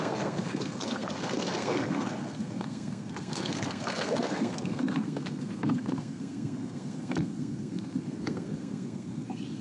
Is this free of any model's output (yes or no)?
no